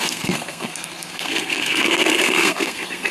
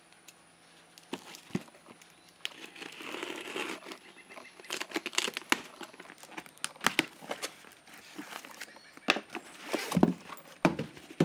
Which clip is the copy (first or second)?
first